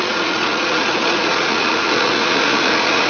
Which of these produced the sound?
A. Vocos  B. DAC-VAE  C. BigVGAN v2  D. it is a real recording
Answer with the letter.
A